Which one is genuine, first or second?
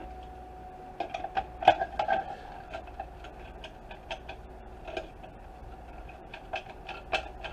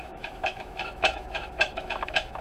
first